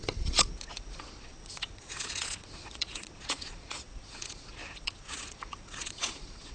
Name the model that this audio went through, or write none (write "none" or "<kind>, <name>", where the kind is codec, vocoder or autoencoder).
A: vocoder, Vocos